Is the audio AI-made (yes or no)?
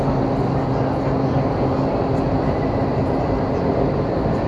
no